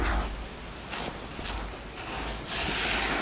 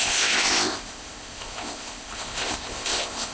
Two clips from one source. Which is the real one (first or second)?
first